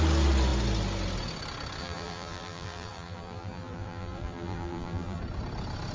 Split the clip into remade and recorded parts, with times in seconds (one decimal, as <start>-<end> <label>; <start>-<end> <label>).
0.0-1.8 recorded; 1.8-5.2 remade; 5.2-5.9 recorded